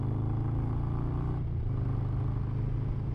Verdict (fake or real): real